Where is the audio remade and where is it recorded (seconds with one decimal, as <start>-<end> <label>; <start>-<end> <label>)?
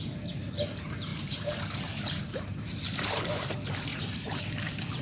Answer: 0.0-1.1 recorded; 1.1-3.5 remade; 3.5-3.9 recorded; 3.9-5.0 remade